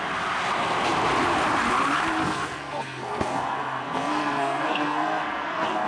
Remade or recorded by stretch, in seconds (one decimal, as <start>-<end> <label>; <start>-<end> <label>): 0.0-2.2 recorded; 2.2-5.9 remade